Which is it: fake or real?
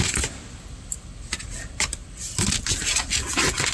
real